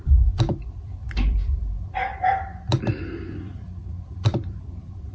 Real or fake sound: fake